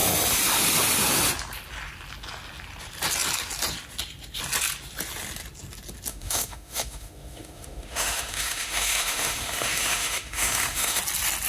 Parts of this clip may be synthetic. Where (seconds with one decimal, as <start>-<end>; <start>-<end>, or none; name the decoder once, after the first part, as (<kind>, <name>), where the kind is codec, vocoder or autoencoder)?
6.1-11.0 (autoencoder, DAC-VAE)